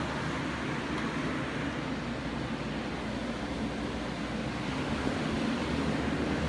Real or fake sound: real